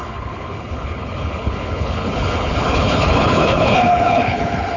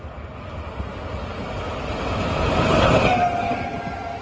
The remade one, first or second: first